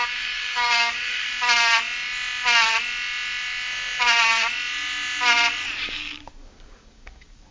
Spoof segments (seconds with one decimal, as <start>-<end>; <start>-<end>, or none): 0.0-1.3; 5.8-7.5